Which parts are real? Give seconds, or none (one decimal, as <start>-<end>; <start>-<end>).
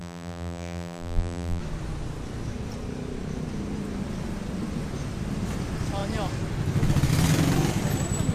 1.6-8.3